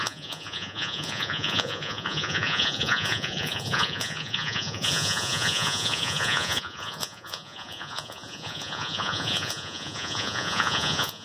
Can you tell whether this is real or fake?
fake